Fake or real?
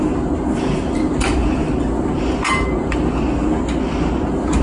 real